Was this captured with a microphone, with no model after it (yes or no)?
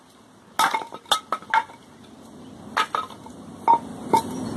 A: yes